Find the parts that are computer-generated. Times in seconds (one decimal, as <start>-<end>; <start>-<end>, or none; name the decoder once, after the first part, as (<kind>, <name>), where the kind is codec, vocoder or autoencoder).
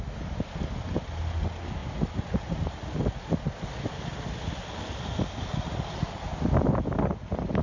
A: none